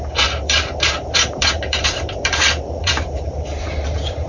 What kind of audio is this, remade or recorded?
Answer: remade